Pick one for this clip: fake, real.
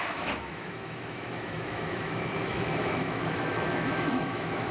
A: fake